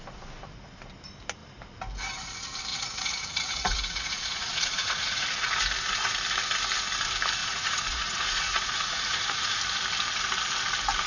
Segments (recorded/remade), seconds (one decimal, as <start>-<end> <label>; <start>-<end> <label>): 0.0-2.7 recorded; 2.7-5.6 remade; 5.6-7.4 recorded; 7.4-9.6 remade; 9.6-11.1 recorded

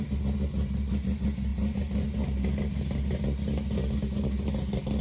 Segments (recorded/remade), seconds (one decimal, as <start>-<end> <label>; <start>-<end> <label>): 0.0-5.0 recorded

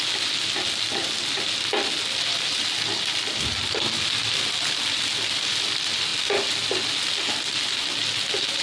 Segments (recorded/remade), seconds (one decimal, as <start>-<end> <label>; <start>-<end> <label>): 0.0-8.6 recorded

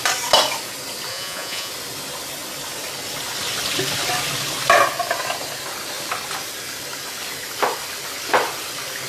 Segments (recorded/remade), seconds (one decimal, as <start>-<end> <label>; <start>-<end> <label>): 0.0-1.1 recorded; 1.1-1.7 remade; 1.7-9.1 recorded

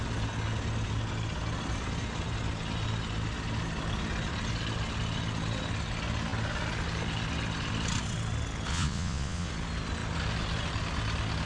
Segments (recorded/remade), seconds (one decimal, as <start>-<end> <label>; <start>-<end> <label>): 0.0-8.7 recorded; 8.7-9.5 remade; 9.5-11.5 recorded

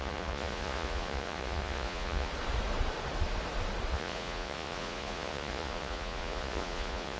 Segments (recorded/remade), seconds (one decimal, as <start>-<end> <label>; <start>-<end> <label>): 0.0-2.3 remade; 2.3-3.9 recorded; 3.9-7.2 remade

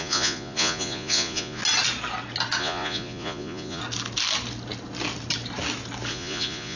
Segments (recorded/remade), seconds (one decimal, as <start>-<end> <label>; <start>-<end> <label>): 0.0-1.6 remade; 1.6-2.6 recorded; 2.6-3.8 remade; 3.8-6.1 recorded; 6.1-6.8 remade